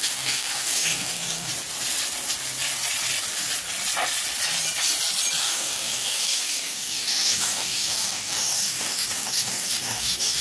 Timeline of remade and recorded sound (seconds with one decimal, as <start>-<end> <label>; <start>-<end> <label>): 0.0-1.5 remade; 1.5-5.4 recorded; 5.4-10.4 remade